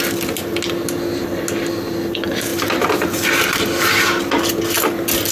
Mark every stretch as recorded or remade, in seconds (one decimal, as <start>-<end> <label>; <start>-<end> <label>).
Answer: 0.0-2.5 recorded; 2.5-3.3 remade; 3.3-5.3 recorded